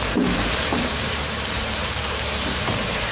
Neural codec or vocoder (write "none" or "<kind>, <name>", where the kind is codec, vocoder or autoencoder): vocoder, BigVGAN v2